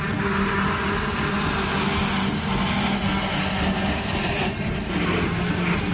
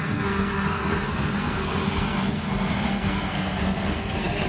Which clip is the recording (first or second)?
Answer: first